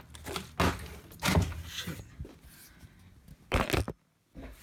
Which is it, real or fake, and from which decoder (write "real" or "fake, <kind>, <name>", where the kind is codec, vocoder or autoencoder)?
real